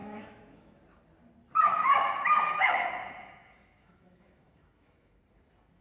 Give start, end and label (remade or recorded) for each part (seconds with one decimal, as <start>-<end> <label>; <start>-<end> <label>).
0.0-0.8 remade; 0.8-1.7 recorded; 1.7-5.2 remade; 5.2-5.8 recorded